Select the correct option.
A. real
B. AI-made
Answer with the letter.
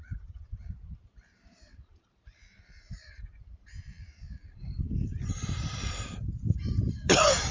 B